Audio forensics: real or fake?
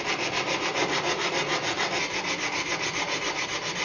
real